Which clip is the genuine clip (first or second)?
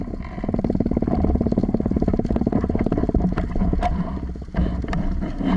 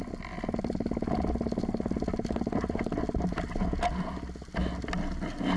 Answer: second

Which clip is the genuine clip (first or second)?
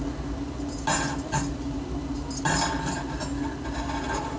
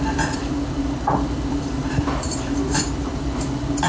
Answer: first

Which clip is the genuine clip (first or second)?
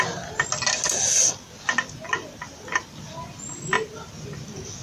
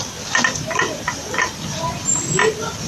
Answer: first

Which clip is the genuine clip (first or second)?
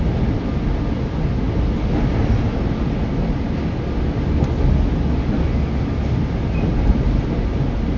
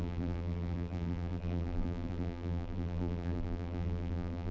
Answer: first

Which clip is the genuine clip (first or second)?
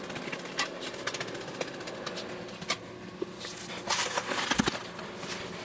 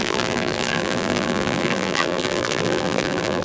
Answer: first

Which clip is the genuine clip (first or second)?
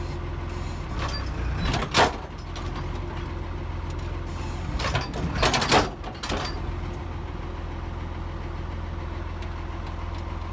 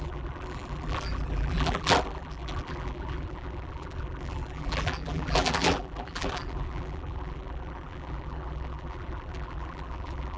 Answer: first